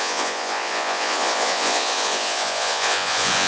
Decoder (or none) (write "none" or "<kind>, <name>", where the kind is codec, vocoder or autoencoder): vocoder, Vocos